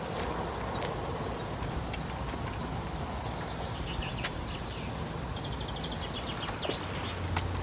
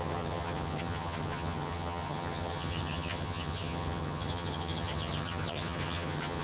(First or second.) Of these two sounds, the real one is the first